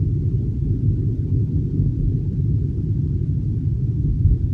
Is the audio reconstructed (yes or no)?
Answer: no